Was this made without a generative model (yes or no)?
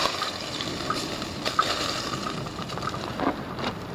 no